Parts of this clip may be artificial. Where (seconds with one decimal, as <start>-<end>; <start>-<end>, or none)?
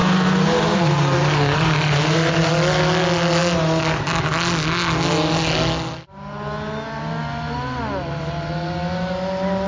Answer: 0.0-2.5